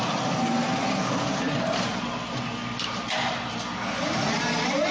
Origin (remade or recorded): recorded